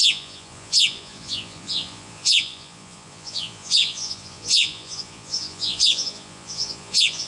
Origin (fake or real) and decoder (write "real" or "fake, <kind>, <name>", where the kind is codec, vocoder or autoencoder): fake, vocoder, Vocos